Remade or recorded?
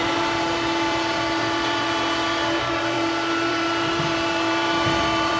remade